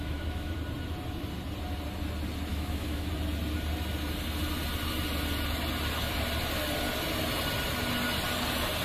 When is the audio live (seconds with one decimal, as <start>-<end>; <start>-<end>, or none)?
0.5-2.5; 3.1-8.8